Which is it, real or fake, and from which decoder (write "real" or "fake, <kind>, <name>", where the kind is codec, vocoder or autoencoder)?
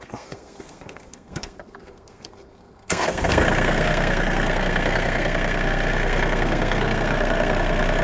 fake, codec, SNAC